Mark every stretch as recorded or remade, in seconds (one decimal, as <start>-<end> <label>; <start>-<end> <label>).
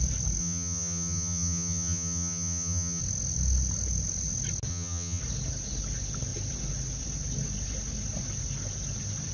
0.0-0.4 recorded; 0.4-3.0 remade; 3.0-4.7 recorded; 4.7-5.2 remade; 5.2-9.3 recorded